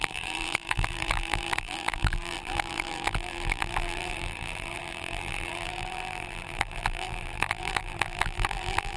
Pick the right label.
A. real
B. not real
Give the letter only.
B